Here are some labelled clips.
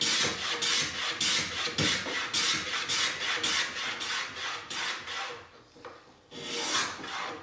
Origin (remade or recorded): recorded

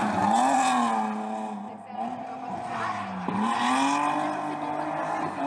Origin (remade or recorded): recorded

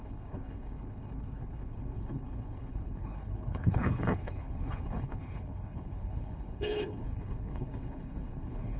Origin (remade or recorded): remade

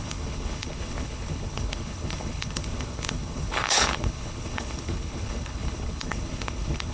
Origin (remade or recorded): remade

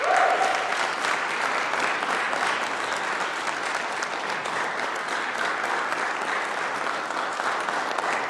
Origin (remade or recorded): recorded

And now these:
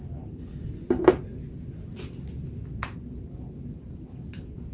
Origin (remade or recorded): recorded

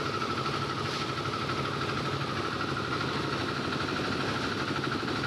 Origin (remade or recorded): recorded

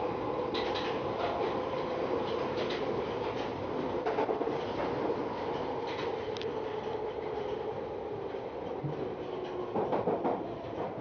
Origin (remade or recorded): recorded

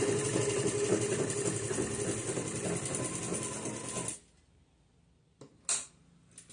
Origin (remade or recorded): recorded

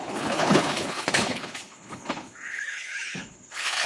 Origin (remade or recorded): remade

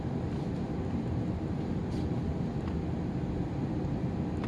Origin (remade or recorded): recorded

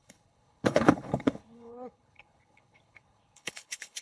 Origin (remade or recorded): remade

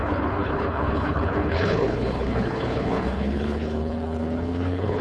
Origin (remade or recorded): remade